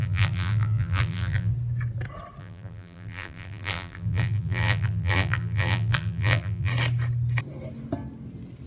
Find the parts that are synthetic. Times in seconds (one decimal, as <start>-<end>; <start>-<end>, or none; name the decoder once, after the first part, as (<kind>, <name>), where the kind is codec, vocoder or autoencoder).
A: 0.0-1.5 (vocoder, BigVGAN v2); 2.4-6.7